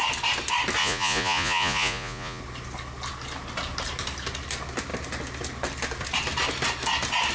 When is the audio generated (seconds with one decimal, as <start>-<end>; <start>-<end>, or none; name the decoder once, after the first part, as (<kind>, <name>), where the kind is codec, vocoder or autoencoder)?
0.8-2.4 (vocoder, Vocos)